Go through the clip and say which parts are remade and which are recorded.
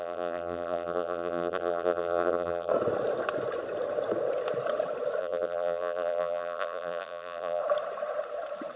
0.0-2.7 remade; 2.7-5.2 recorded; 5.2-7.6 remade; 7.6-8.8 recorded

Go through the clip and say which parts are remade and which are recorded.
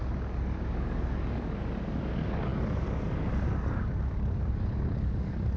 0.0-5.6 remade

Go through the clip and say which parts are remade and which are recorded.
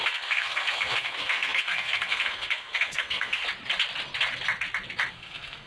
0.0-3.4 remade; 3.4-5.1 recorded; 5.1-5.7 remade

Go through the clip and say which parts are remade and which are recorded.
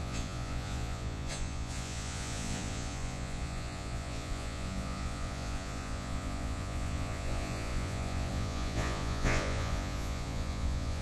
0.0-11.0 remade